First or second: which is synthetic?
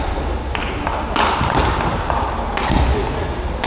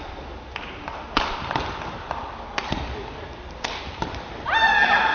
second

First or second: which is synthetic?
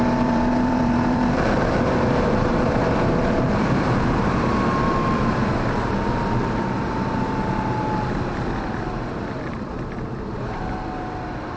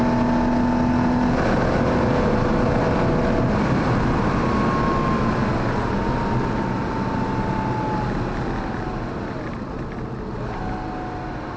first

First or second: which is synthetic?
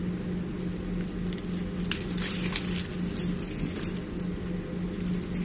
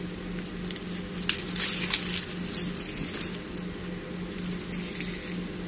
first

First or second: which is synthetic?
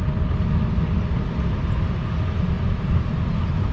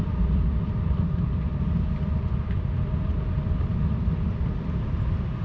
second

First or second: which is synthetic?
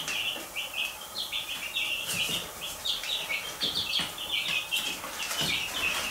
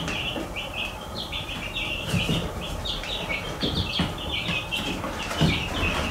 second